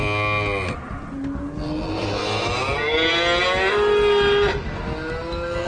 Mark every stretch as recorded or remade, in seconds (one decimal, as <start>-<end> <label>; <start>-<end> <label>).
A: 0.0-5.7 recorded